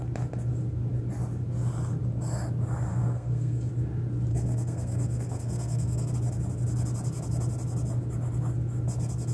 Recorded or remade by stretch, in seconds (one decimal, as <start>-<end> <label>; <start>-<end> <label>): 0.0-2.9 recorded; 2.9-3.7 remade; 3.7-4.3 recorded; 4.3-6.1 remade; 6.1-9.3 recorded